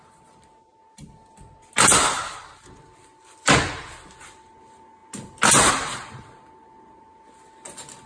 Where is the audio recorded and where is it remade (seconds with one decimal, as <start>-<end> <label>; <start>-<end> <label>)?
0.0-8.1 recorded